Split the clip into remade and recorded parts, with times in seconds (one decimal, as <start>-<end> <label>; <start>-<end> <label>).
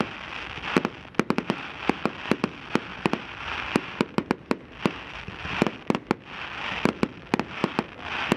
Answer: 0.0-2.9 recorded; 2.9-6.0 remade; 6.0-8.4 recorded